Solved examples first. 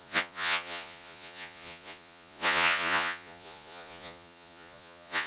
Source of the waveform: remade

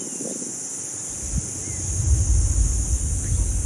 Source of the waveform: recorded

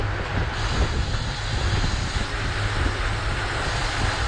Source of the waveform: recorded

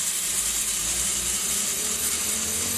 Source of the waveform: remade